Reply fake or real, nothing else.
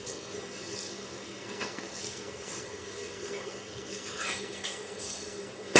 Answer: fake